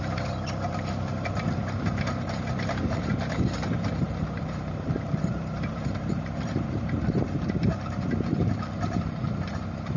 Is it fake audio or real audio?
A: fake